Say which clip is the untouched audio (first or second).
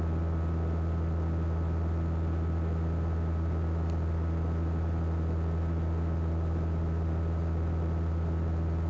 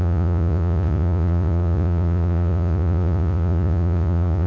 first